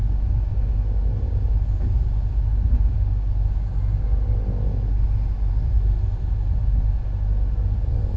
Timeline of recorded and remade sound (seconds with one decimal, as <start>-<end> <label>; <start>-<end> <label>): 0.0-8.2 recorded